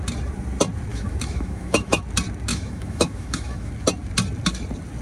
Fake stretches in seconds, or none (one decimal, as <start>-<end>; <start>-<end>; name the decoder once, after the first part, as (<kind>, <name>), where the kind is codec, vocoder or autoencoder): 0.9-2.0 (autoencoder, DAC-VAE); 2.5-3.7